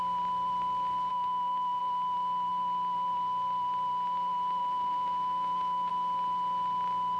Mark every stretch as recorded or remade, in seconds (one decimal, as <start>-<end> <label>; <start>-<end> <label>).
0.0-1.1 recorded; 1.1-1.8 remade; 1.8-4.6 recorded; 4.6-5.9 remade; 5.9-7.2 recorded